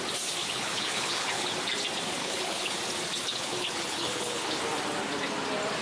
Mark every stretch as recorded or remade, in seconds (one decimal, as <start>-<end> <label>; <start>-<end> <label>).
0.0-0.4 recorded; 0.4-1.5 remade; 1.5-2.2 recorded; 2.2-2.8 remade; 2.8-3.3 recorded; 3.3-4.6 remade; 4.6-5.8 recorded